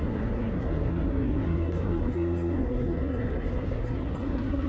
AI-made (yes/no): yes